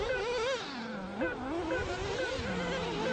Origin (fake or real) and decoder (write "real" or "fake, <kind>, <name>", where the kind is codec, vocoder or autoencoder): real